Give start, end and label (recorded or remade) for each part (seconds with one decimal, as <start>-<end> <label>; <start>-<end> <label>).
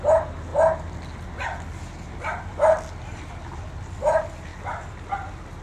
0.0-5.6 recorded